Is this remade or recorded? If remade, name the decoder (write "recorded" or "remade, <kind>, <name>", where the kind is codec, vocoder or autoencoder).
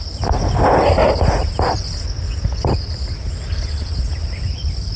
recorded